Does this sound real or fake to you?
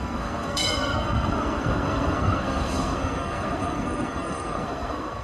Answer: fake